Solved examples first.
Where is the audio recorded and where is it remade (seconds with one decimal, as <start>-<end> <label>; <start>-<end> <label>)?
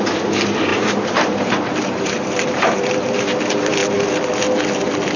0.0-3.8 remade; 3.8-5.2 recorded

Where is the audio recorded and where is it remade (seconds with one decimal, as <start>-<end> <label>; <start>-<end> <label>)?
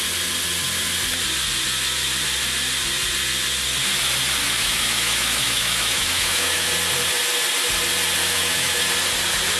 0.0-4.4 recorded; 4.4-6.7 remade; 6.7-8.2 recorded; 8.2-8.8 remade; 8.8-9.6 recorded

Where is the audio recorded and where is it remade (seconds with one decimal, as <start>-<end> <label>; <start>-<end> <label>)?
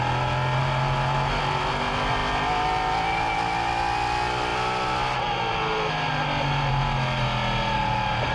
0.0-8.3 recorded